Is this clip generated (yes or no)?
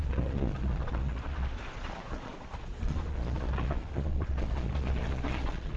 yes